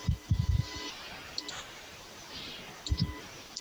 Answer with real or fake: fake